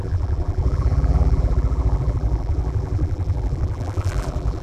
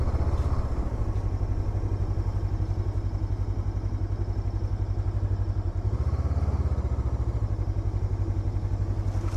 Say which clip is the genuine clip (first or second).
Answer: second